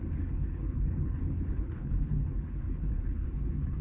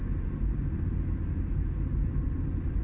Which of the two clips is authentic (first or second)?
second